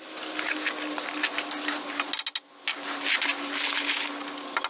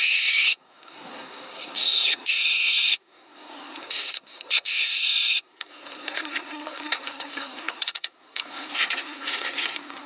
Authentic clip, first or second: first